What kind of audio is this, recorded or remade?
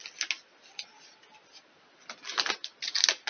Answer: recorded